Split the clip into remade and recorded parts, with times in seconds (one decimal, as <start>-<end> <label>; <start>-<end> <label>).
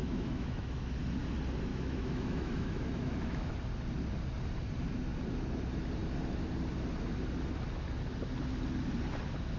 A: 0.0-0.9 remade; 0.9-1.7 recorded; 1.7-3.5 remade; 3.5-9.6 recorded